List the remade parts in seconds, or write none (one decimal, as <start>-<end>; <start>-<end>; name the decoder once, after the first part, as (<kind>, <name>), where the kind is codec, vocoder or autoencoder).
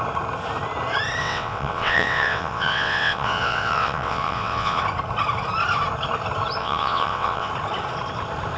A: 1.2-4.8 (vocoder, WaveNeXt); 6.6-7.5